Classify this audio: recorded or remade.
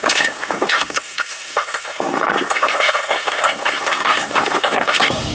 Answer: remade